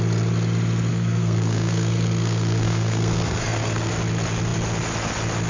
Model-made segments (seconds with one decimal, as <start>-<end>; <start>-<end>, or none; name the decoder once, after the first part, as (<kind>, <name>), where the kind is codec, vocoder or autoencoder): 0.9-3.9 (codec, SNAC)